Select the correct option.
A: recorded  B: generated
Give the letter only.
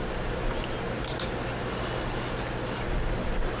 A